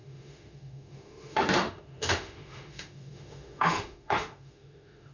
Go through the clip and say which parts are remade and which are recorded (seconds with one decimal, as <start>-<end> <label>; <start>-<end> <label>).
0.0-5.1 remade